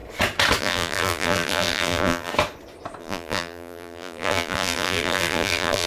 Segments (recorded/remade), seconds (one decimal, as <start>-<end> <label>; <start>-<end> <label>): 0.0-0.6 recorded; 0.6-2.3 remade; 2.3-3.0 recorded; 3.0-5.9 remade